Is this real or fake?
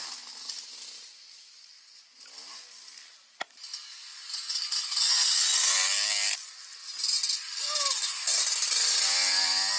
real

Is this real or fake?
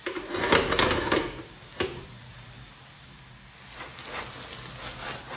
real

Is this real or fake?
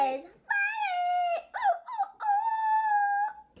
real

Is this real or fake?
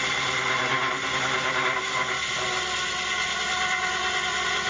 real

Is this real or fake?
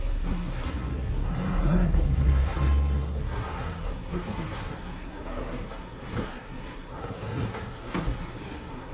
fake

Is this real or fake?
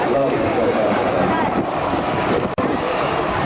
fake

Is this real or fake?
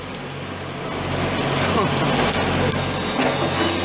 real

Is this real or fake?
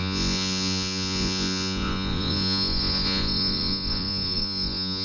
fake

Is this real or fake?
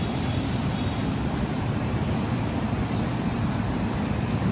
fake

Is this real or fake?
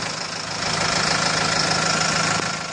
real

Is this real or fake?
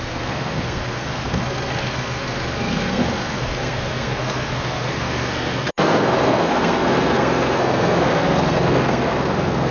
fake